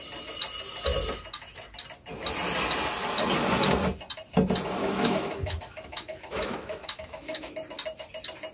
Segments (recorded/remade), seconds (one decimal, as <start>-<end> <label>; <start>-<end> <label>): 0.0-4.8 recorded; 4.8-7.5 remade; 7.5-8.5 recorded